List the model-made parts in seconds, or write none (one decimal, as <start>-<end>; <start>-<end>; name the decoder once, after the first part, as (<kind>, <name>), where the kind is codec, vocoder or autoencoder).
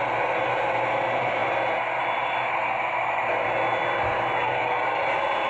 none